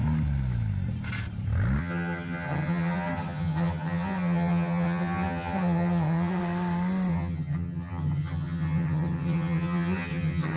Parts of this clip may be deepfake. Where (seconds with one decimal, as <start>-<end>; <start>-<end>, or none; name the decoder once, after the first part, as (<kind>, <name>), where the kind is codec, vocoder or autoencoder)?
1.8-6.4 (vocoder, HiFi-GAN); 7.1-10.6